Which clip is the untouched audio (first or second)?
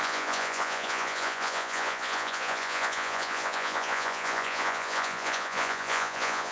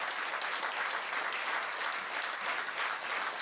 second